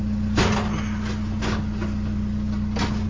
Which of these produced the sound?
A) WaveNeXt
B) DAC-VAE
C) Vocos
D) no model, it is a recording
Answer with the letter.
D